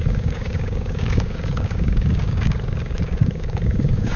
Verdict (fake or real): fake